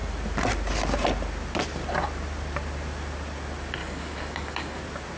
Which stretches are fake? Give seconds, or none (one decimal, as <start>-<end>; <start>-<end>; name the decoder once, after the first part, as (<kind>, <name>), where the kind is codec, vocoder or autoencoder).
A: 3.8-4.8 (codec, DAC)